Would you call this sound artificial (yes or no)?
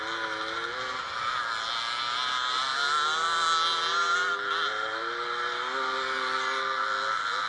no